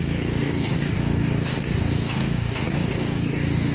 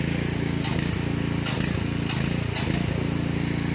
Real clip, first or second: second